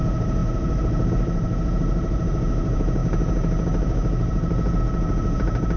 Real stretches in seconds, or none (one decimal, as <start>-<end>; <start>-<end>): 0.0-5.8